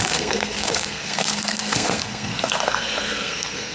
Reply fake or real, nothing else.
fake